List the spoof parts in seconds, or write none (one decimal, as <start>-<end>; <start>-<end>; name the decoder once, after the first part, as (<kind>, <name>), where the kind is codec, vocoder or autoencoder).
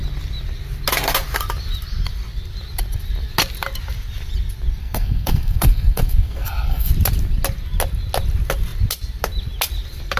4.8-6.9 (codec, SNAC)